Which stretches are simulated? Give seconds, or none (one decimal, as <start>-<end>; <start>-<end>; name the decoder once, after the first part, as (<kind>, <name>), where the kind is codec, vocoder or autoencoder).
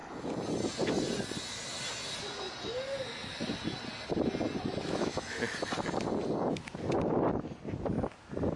4.8-5.4 (autoencoder, DAC-VAE)